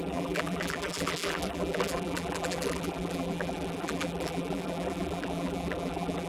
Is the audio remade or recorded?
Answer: remade